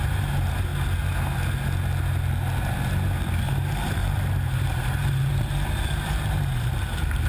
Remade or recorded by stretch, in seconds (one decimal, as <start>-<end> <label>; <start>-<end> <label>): 0.0-0.7 remade; 0.7-3.5 recorded; 3.5-7.3 remade